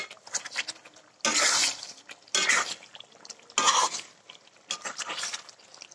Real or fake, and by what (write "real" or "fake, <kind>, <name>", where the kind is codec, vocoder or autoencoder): real